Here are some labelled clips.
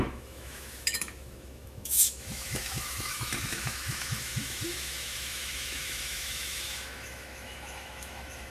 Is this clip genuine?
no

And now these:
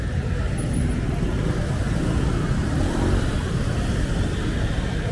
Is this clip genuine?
yes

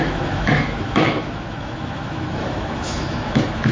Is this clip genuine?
no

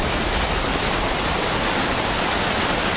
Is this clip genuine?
yes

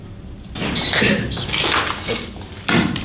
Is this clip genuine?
yes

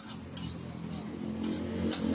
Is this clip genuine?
yes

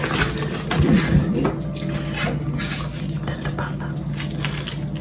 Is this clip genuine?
yes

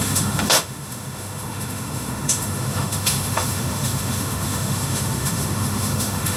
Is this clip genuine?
no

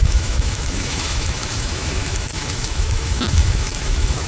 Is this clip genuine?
no